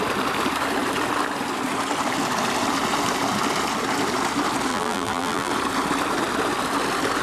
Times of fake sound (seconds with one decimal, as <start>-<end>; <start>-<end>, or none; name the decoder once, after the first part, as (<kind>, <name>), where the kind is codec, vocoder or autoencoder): 4.7-5.5 (vocoder, BigVGAN v2)